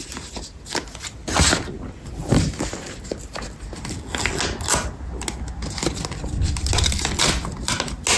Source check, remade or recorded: recorded